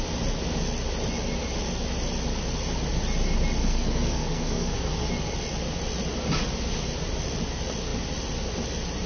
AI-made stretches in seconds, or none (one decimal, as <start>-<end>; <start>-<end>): 3.6-5.1